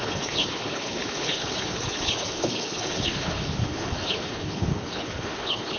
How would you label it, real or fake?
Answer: fake